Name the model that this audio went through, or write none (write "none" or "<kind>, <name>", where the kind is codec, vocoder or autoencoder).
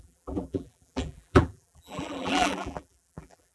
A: vocoder, BigVGAN v2